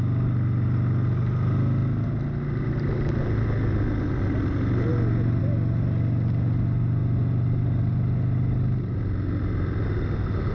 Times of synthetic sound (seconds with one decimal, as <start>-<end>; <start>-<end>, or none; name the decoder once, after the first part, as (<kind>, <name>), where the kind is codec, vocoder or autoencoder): none